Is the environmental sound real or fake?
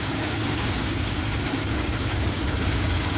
fake